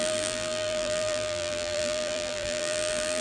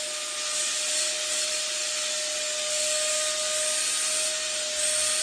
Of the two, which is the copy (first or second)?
first